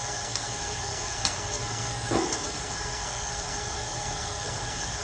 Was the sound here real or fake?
fake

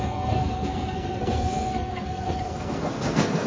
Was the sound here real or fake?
fake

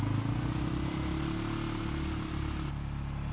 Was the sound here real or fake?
real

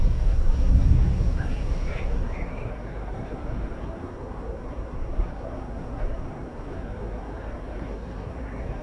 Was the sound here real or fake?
fake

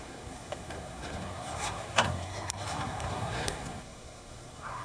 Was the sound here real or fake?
fake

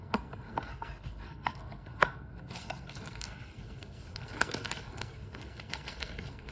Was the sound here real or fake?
fake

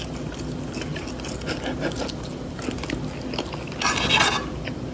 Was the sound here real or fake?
real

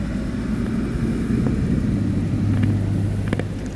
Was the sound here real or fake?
real